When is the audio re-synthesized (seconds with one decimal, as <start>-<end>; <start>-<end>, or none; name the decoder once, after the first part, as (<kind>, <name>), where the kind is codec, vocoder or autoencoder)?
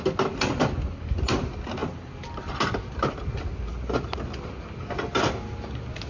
none